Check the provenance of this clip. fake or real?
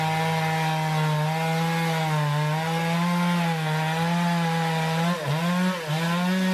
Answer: real